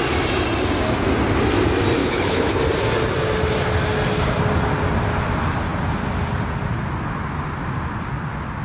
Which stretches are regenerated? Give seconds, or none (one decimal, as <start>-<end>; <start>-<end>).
2.0-2.5

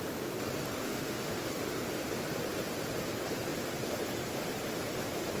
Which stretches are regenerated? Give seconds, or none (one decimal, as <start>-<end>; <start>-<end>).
0.8-1.5

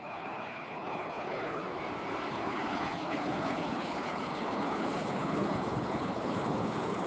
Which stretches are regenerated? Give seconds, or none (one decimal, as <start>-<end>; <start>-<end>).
0.0-1.6; 2.3-7.1

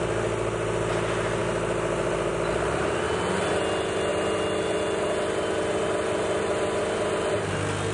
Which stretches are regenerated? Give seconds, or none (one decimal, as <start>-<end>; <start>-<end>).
none

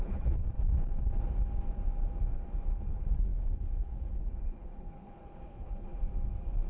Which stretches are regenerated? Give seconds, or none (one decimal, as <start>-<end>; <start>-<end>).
0.0-0.4; 2.8-5.9